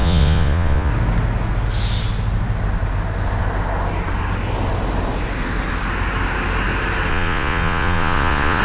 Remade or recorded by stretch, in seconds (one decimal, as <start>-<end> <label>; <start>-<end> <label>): 0.0-0.9 remade; 0.9-7.1 recorded; 7.1-8.6 remade